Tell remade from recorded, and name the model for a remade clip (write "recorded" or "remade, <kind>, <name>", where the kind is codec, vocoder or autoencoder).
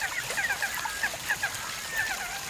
recorded